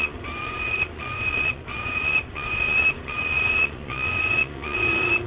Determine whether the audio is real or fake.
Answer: fake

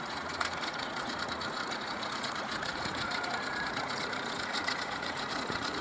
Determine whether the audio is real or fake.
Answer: fake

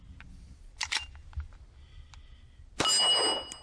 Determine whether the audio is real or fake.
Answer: real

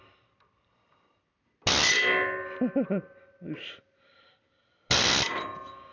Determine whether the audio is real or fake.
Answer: real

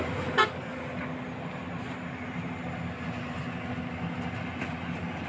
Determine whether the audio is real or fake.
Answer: real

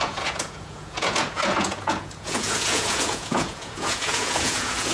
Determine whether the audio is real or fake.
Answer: fake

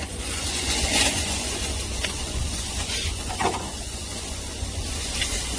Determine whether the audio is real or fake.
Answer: fake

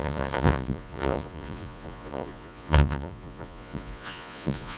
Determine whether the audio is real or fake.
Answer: fake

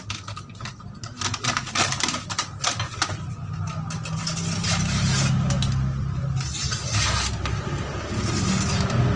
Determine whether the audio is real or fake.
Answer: real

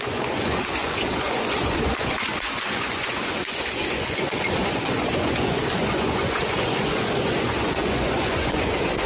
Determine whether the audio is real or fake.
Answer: fake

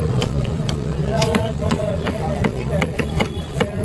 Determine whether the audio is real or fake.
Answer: fake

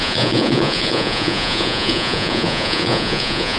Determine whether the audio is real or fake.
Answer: fake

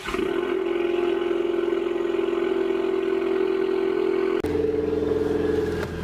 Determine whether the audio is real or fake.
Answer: real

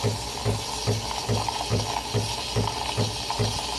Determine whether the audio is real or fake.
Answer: real